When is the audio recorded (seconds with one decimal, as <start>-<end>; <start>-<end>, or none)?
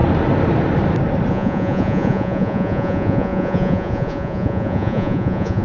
0.0-1.3